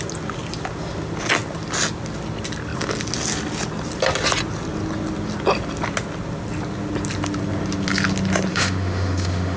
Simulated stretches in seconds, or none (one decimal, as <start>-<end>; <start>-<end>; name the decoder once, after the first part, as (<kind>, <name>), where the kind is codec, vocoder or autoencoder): 8.5-9.6 (autoencoder, DAC-VAE)